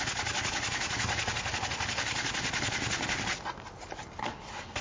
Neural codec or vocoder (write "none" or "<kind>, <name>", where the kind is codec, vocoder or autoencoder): none